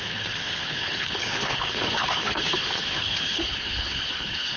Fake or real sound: fake